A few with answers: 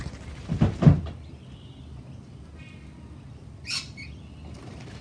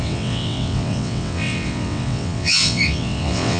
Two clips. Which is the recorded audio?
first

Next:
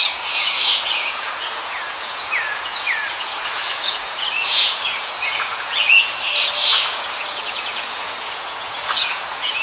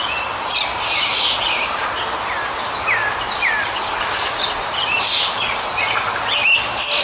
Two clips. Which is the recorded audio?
second